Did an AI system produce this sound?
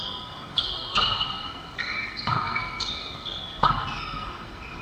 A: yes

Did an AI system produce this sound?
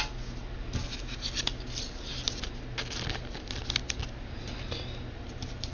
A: no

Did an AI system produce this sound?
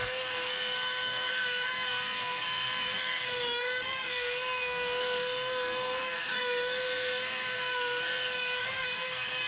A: yes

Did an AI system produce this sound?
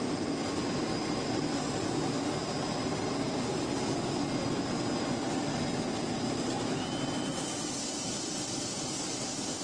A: no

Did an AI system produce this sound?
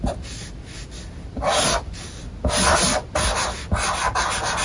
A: no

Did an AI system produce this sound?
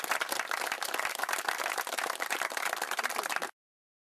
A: no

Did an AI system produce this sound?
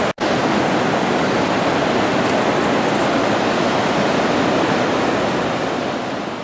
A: no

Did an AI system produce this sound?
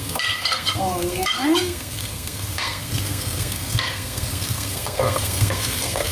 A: yes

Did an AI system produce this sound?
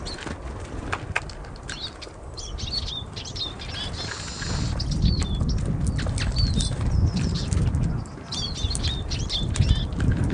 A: no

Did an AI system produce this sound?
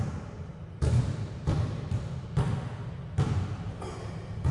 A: no